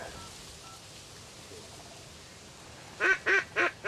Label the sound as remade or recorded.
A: recorded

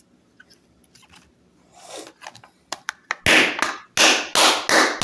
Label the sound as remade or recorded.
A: recorded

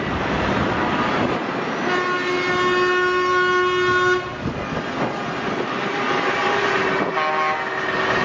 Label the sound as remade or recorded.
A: recorded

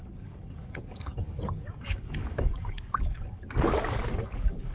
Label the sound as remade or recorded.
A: remade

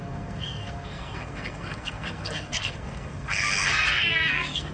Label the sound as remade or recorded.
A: remade